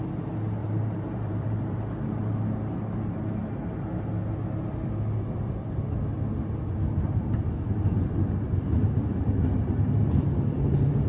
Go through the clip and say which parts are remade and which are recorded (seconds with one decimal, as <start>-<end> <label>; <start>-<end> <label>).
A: 0.0-0.6 recorded; 0.6-1.8 remade; 1.8-11.1 recorded